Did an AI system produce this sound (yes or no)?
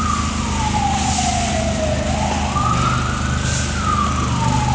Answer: no